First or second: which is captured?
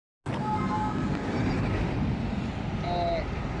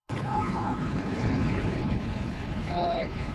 first